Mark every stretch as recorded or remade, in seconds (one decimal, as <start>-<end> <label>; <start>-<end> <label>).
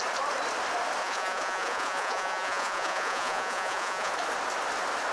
0.0-1.0 recorded; 1.0-4.1 remade; 4.1-5.1 recorded